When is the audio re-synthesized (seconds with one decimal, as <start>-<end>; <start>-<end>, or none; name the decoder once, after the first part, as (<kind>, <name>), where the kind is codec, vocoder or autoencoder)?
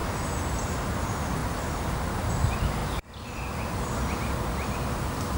none